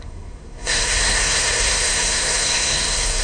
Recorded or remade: remade